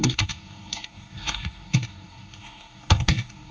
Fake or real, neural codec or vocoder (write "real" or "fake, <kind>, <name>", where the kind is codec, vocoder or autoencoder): fake, codec, SNAC